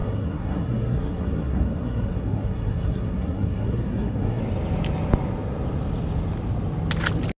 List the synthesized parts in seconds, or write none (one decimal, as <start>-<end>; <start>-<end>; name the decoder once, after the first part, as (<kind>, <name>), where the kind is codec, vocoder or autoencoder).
0.0-4.4 (codec, SNAC)